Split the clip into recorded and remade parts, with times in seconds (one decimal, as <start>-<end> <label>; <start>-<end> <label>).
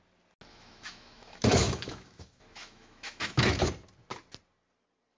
0.0-0.5 recorded; 0.5-3.6 remade; 3.6-5.2 recorded